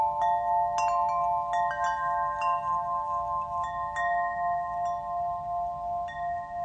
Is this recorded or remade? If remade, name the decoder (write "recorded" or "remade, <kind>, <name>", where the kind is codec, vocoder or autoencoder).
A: recorded